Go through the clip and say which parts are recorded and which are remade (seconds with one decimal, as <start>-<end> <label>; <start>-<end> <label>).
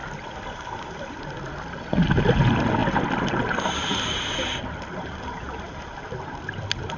0.0-7.0 recorded